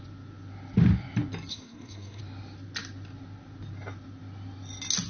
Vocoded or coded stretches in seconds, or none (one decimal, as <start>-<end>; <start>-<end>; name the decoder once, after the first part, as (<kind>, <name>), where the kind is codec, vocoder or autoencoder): 1.5-2.2 (codec, SNAC)